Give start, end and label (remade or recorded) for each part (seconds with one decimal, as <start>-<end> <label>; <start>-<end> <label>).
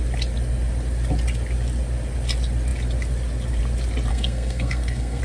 0.0-4.1 recorded; 4.1-5.2 remade